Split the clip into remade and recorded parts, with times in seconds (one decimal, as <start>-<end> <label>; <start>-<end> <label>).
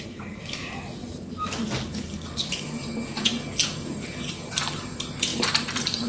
0.0-1.0 recorded; 1.0-3.3 remade; 3.3-3.8 recorded; 3.8-4.5 remade; 4.5-5.3 recorded; 5.3-6.1 remade